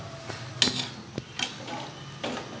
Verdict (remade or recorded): recorded